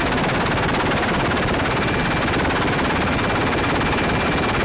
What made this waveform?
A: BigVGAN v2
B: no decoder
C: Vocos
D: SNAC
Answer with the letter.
B